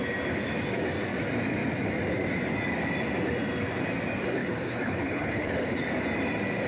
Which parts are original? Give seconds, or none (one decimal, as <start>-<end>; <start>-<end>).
0.0-4.4; 5.8-6.7